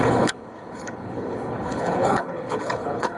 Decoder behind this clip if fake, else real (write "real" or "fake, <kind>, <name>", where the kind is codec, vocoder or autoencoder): fake, codec, HILCodec